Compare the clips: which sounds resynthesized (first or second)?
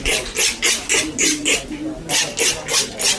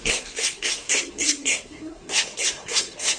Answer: second